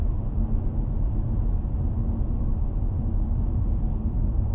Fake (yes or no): no